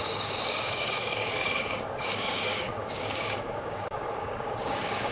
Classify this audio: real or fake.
fake